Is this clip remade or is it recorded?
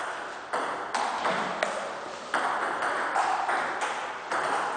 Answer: recorded